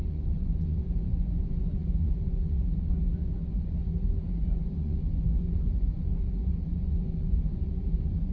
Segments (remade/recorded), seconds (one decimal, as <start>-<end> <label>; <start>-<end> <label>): 0.0-8.3 remade